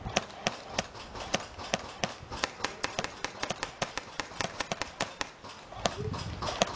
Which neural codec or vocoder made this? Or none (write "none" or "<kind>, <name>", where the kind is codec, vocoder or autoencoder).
none